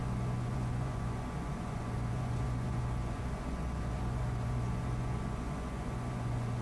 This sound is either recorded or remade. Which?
remade